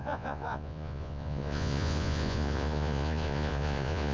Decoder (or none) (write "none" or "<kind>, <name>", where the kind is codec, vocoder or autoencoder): vocoder, Vocos